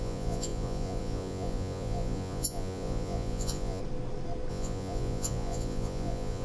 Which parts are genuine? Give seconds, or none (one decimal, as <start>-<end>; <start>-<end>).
3.8-4.5